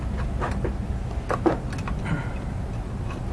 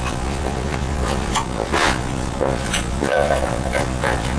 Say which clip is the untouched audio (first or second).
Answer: first